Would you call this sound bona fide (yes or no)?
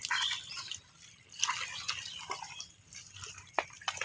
yes